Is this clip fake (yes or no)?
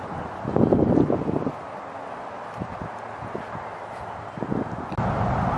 no